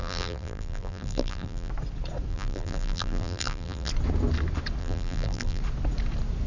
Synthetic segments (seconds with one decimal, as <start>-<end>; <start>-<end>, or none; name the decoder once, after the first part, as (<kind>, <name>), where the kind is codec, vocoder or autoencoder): 0.0-1.7 (vocoder, BigVGAN v2); 2.3-3.9; 4.8-5.6